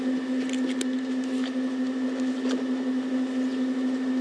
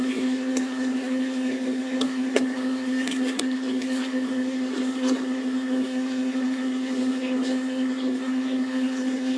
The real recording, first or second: first